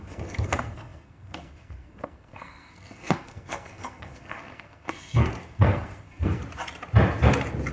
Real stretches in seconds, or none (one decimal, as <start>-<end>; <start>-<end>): 6.4-7.7